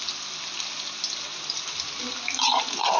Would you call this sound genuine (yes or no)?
yes